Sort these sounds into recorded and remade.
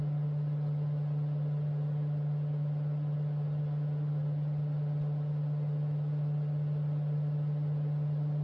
recorded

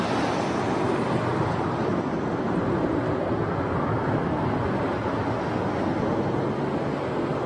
recorded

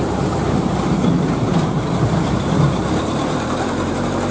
remade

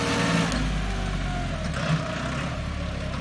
recorded